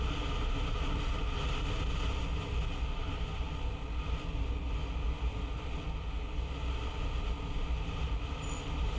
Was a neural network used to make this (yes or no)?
no